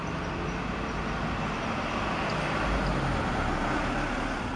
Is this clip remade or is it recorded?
recorded